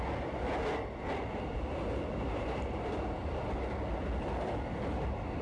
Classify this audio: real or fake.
real